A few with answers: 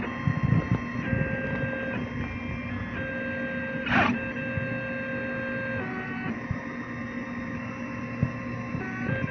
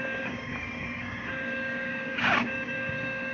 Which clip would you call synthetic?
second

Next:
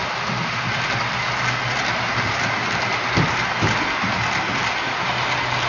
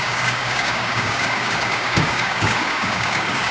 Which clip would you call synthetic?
second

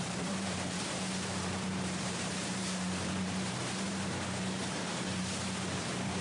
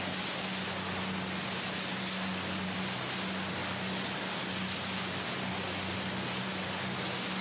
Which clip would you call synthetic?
first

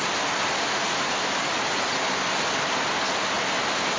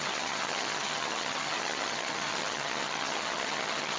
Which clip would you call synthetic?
second